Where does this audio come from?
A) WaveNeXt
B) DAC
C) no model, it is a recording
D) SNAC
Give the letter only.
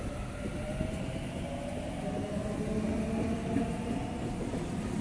C